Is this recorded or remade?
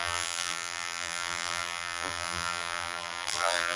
remade